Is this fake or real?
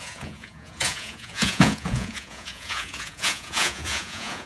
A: fake